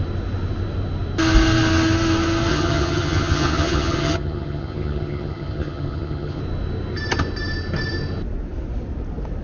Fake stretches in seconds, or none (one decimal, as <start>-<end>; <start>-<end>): 2.5-6.4